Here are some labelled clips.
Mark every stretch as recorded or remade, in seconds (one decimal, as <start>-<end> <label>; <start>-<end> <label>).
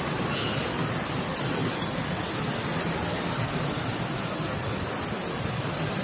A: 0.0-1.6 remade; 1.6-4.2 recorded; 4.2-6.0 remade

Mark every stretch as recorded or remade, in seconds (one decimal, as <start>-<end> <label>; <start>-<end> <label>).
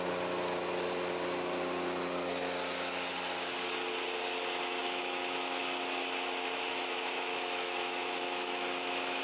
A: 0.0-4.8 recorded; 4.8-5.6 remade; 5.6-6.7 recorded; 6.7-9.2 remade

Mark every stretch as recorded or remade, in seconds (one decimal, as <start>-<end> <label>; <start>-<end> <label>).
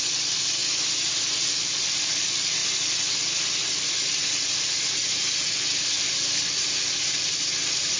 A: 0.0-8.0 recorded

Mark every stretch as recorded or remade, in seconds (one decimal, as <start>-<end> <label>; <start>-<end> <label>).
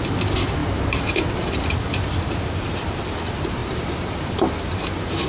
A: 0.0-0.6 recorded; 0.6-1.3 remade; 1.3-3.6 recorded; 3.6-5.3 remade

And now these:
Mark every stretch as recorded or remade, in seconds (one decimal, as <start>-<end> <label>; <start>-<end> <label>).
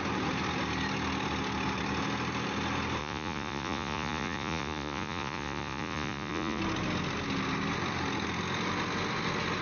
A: 0.0-3.0 recorded; 3.0-6.6 remade; 6.6-9.6 recorded